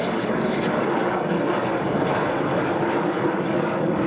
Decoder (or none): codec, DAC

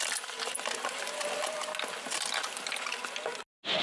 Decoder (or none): none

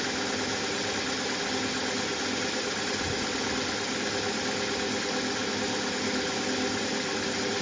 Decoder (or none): none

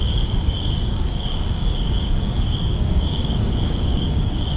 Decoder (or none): codec, DAC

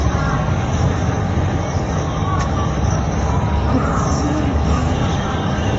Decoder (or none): codec, DAC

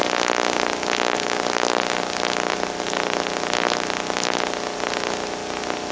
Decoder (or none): none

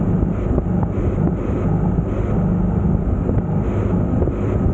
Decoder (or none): none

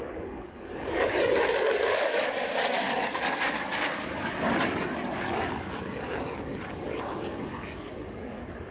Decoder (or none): codec, DAC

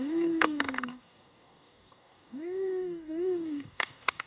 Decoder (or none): codec, DAC